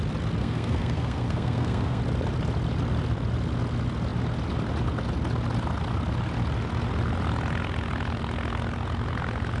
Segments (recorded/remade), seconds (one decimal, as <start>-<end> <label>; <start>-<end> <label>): 0.0-0.4 recorded; 0.4-2.0 remade; 2.0-9.6 recorded